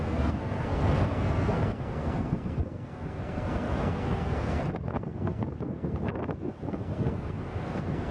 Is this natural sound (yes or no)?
no